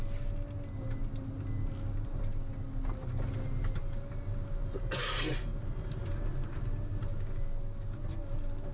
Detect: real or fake real